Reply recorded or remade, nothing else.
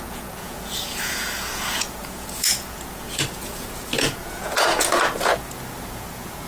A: remade